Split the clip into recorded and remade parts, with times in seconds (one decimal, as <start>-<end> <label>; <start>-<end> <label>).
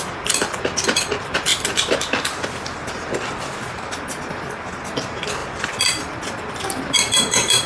0.0-7.7 recorded